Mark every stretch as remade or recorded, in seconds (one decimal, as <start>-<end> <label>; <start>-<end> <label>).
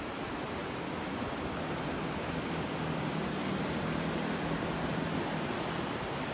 0.0-6.3 recorded